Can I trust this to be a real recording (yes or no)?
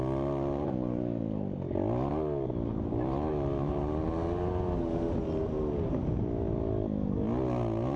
yes